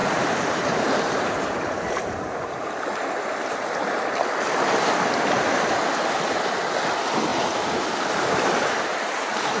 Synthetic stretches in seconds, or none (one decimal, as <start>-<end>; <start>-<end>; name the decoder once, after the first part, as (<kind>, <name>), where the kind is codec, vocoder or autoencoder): 0.0-2.6 (vocoder, BigVGAN v2); 7.3-9.6